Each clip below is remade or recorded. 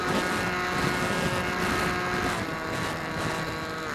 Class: recorded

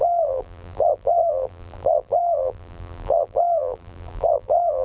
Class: remade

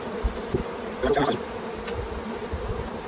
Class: remade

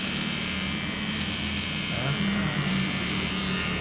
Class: remade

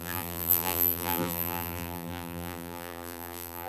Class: remade